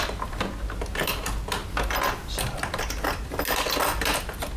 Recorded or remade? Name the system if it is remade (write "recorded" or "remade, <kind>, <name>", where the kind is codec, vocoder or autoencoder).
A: recorded